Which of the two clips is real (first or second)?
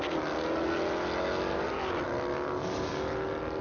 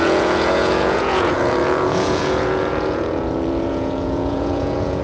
first